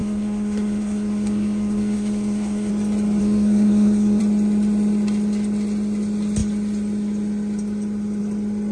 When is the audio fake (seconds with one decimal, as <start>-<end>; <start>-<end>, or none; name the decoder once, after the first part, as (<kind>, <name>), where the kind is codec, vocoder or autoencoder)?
0.0-2.7 (codec, SNAC); 3.2-4.2